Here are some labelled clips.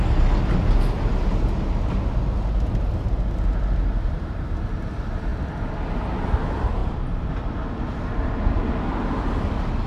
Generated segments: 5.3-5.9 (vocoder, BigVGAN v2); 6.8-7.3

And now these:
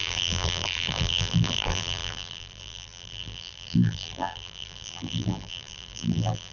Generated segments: 0.0-6.5 (vocoder, BigVGAN v2)